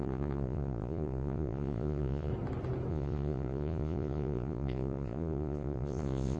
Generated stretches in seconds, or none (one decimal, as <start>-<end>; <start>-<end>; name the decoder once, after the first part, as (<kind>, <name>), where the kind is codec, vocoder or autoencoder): 0.0-2.3 (vocoder, Vocos); 2.9-6.4